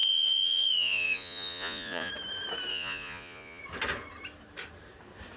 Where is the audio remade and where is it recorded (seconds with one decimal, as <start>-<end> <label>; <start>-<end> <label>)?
0.0-2.1 remade; 2.1-2.7 recorded; 2.7-3.6 remade; 3.6-5.4 recorded

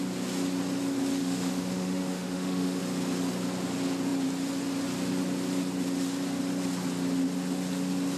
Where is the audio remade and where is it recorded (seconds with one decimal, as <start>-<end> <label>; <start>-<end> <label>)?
0.0-1.2 recorded; 1.2-2.8 remade; 2.8-8.2 recorded

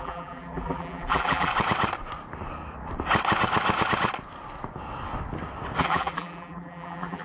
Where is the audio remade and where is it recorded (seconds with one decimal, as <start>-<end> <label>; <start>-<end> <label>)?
0.0-1.5 remade; 1.5-5.8 recorded; 5.8-7.2 remade

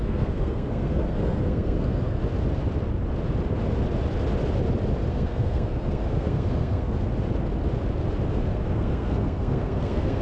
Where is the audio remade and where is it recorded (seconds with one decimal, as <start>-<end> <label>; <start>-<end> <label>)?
0.0-2.2 remade; 2.2-5.1 recorded; 5.1-7.1 remade; 7.1-8.3 recorded; 8.3-10.2 remade

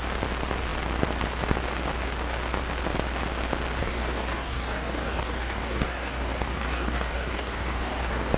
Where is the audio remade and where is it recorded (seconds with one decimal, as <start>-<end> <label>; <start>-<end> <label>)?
0.0-3.8 recorded; 3.8-8.4 remade

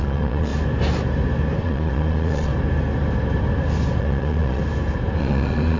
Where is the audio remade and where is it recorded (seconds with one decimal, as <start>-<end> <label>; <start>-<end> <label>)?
0.0-0.5 remade; 0.5-1.6 recorded; 1.6-2.5 remade; 2.5-4.0 recorded; 4.0-4.6 remade; 4.6-5.2 recorded; 5.2-5.8 remade

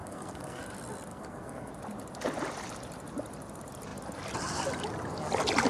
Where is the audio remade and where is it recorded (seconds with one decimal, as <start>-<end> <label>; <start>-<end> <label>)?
0.0-0.6 remade; 0.6-1.1 recorded; 1.1-1.7 remade; 1.7-5.7 recorded